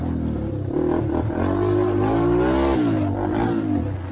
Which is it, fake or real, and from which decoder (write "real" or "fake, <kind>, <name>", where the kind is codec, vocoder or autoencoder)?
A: real